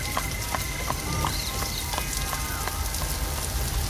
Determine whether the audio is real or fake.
real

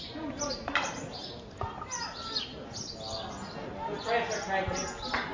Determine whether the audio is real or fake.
real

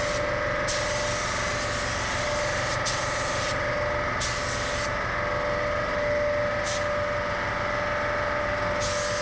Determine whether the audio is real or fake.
real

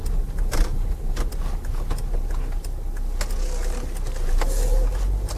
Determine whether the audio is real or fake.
real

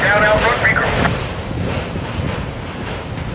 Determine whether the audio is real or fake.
real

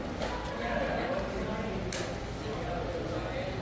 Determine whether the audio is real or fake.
real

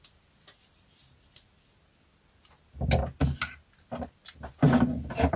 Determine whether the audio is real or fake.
real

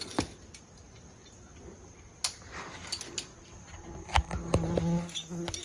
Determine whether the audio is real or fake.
real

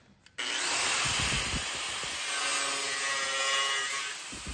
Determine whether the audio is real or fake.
real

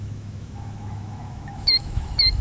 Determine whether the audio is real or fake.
fake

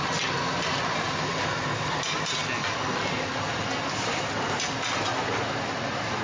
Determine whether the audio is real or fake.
real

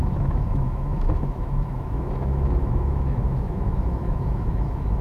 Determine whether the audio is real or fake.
fake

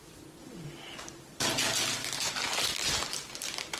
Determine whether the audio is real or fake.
real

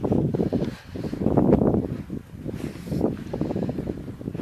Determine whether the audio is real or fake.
real